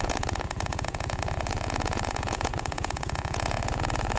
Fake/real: fake